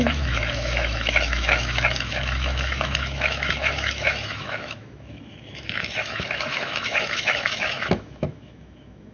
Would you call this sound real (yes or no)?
no